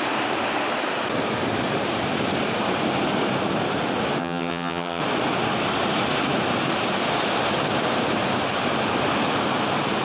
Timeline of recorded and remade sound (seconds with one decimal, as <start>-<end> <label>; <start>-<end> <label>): 0.0-4.2 recorded; 4.2-5.0 remade; 5.0-10.0 recorded